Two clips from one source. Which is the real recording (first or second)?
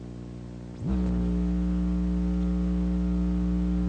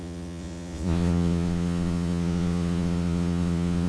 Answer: first